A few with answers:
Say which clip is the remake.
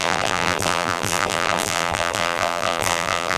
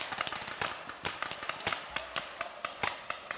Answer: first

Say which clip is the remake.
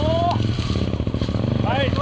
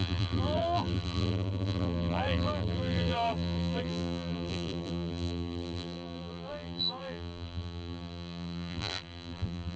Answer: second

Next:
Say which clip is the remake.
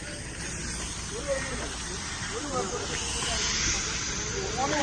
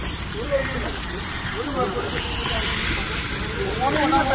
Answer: second